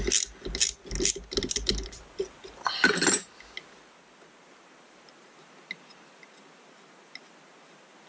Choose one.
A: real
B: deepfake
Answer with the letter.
A